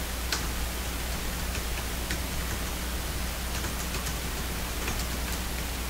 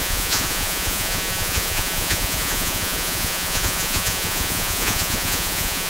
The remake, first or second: second